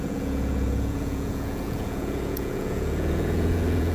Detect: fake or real fake